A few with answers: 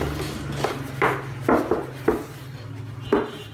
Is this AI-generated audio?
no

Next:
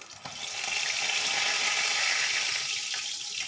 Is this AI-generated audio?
no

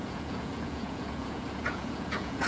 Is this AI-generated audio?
yes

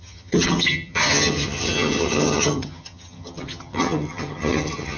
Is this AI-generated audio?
yes